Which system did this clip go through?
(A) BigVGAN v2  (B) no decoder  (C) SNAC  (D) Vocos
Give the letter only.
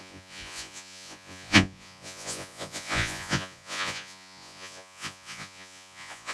D